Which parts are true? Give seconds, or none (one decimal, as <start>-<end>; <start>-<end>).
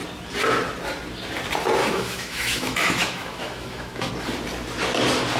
0.0-1.8; 4.1-5.4